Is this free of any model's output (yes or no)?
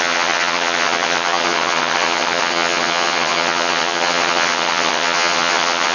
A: no